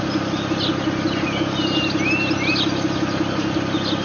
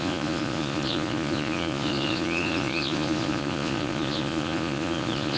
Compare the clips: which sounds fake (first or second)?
second